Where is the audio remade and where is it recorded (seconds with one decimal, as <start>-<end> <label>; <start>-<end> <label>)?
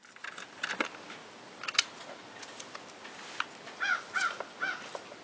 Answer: 0.0-5.2 recorded